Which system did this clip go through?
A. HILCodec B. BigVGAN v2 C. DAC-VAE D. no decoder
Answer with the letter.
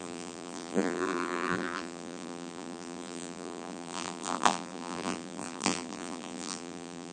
B